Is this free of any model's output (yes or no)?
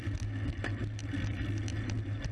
yes